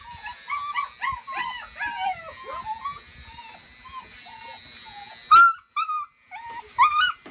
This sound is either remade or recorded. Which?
recorded